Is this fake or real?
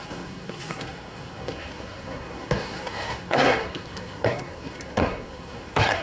fake